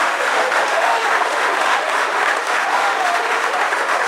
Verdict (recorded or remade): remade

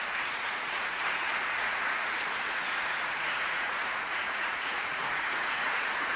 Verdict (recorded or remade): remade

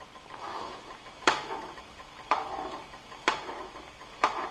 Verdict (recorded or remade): remade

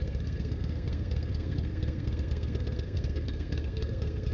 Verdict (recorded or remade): remade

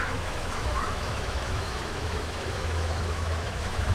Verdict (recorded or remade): remade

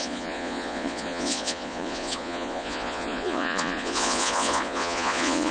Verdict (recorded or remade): remade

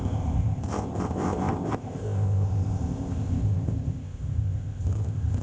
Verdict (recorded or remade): remade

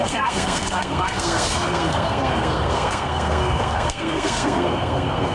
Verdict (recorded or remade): remade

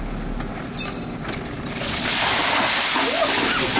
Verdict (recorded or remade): recorded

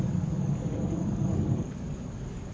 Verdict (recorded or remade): remade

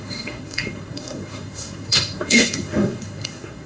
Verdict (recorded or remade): remade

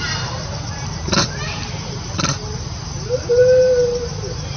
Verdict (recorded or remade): remade